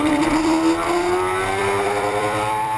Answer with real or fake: fake